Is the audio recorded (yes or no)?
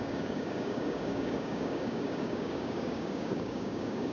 no